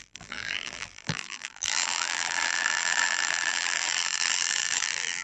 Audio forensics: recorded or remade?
remade